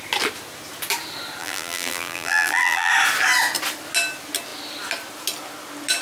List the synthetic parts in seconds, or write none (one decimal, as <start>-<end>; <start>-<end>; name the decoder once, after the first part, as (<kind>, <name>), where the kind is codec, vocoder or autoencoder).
1.4-2.9 (vocoder, BigVGAN v2)